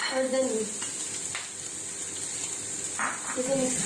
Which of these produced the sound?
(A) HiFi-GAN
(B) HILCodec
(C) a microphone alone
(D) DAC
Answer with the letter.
C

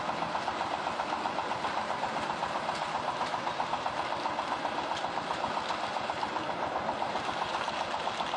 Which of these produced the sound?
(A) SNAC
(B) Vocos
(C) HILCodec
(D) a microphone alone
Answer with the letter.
D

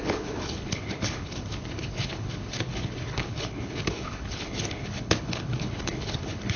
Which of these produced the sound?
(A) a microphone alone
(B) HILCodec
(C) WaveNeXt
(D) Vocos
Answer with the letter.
B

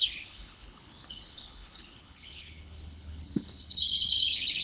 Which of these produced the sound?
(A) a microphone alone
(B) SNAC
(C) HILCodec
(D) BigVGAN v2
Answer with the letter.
C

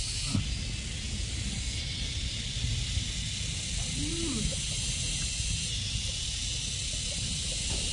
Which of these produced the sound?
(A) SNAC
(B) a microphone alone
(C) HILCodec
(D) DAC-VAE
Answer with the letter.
B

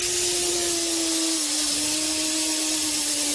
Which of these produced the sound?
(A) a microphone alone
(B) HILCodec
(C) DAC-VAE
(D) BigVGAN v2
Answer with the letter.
A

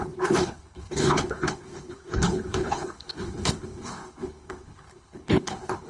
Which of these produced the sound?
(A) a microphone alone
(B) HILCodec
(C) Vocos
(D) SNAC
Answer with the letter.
B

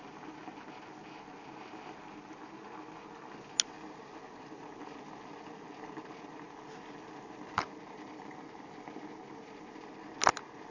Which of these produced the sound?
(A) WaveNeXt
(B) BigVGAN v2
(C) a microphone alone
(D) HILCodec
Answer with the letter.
C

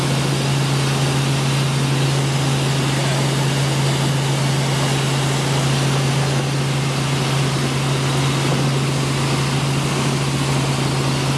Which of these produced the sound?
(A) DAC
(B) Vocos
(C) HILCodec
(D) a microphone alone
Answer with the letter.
D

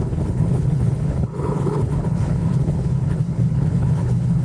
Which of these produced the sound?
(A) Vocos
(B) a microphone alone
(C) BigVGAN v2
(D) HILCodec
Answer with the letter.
D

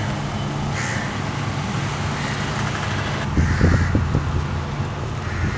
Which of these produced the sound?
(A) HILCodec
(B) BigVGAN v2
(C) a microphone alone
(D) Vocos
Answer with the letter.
C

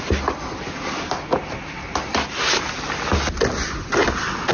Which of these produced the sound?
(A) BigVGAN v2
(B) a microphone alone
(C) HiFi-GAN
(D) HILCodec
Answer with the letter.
B